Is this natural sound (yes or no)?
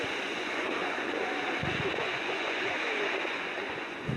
no